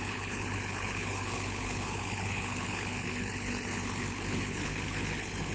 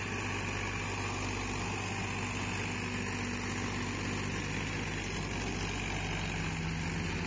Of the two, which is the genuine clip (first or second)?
second